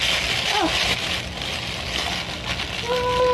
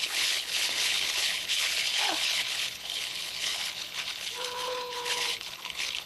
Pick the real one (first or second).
first